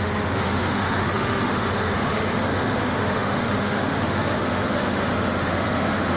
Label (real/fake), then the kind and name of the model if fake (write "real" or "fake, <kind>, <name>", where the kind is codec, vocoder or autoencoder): fake, autoencoder, DAC-VAE